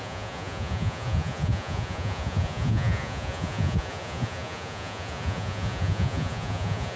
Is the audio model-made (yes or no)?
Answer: yes